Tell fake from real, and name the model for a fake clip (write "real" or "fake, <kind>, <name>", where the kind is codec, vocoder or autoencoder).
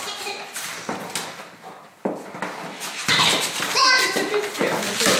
real